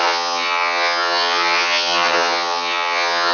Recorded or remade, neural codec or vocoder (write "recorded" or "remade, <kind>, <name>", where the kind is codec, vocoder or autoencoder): remade, vocoder, HiFi-GAN